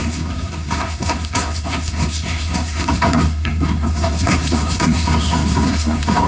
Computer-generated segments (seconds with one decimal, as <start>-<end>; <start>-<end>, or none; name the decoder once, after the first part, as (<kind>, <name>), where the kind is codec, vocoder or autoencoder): 0.0-6.3 (codec, SNAC)